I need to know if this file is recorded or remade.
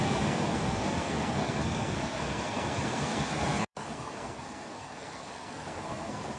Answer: remade